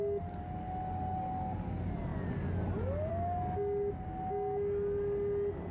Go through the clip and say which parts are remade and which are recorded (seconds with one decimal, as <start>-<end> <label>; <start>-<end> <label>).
0.0-5.7 recorded